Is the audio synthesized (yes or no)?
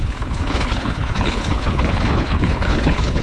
yes